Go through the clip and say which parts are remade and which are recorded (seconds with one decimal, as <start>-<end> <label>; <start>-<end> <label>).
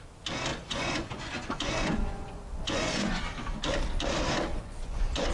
0.0-0.5 recorded; 0.5-3.2 remade; 3.2-4.5 recorded; 4.5-5.3 remade